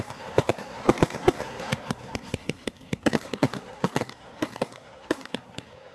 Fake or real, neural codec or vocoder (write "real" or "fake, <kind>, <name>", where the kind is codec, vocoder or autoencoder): fake, codec, SNAC